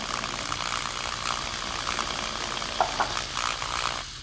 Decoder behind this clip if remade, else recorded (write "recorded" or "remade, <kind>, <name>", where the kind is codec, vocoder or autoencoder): recorded